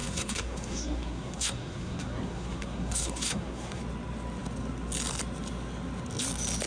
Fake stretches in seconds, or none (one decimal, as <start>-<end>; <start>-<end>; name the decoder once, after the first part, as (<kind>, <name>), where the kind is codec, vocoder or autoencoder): 0.0-3.8 (codec, SNAC)